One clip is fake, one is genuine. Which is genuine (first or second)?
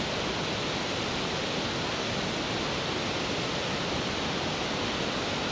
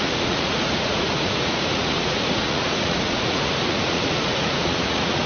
first